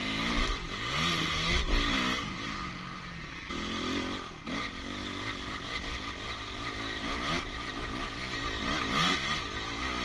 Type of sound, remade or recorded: recorded